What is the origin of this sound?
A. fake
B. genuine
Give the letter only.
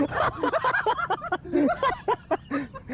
A